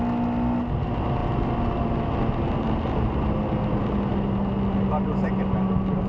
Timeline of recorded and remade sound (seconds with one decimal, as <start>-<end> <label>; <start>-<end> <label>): 0.0-6.1 recorded